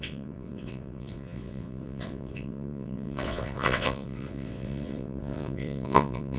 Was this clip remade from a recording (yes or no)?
yes